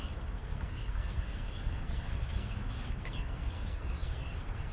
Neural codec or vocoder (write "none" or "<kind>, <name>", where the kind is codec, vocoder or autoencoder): codec, SNAC